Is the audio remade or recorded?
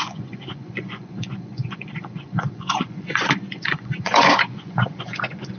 remade